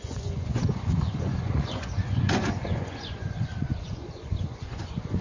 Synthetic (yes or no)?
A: yes